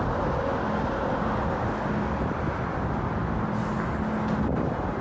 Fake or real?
real